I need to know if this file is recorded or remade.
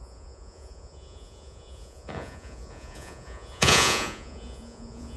remade